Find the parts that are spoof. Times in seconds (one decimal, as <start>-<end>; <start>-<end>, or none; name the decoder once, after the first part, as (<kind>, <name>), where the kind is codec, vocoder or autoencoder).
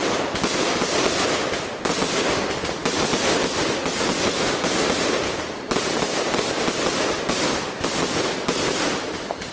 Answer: none